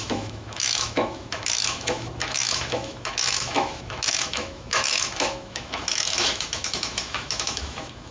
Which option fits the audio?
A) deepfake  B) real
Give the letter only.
A